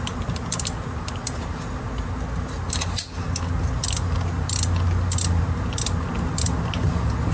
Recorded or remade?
recorded